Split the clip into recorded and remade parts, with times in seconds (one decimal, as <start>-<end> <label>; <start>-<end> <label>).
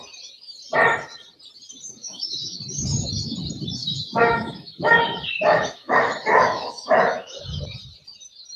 0.0-2.0 recorded; 2.0-2.6 remade; 2.6-3.8 recorded; 3.8-7.4 remade; 7.4-8.6 recorded